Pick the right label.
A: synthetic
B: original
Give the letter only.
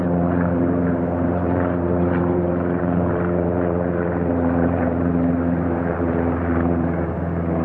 A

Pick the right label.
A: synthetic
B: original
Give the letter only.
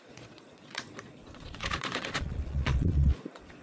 A